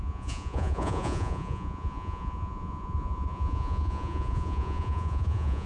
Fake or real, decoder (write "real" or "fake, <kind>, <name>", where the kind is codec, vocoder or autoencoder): fake, vocoder, Vocos